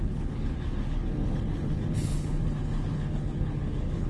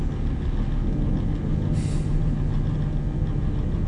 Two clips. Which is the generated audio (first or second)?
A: first